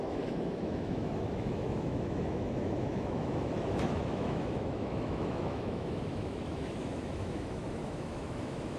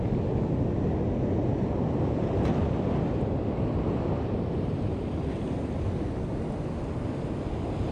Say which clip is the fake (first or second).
first